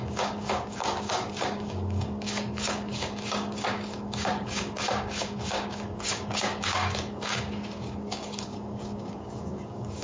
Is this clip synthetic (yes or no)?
yes